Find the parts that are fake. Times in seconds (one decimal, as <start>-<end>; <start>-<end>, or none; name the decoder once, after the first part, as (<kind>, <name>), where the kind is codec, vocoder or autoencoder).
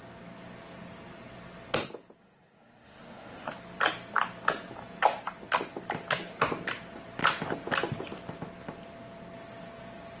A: 2.2-3.5 (codec, SNAC)